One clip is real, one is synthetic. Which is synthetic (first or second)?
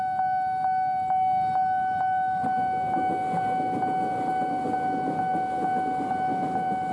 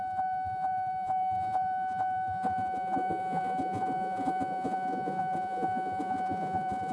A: second